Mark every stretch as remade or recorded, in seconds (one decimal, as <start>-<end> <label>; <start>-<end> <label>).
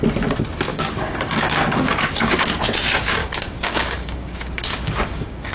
0.0-0.7 recorded; 0.7-2.5 remade; 2.5-3.2 recorded; 3.2-5.5 remade